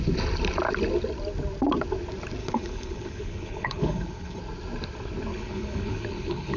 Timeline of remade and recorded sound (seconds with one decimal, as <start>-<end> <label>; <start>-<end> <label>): 0.0-2.4 recorded; 2.4-4.4 remade; 4.4-5.3 recorded; 5.3-6.6 remade